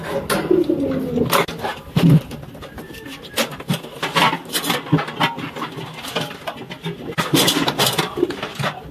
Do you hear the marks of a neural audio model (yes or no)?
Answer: no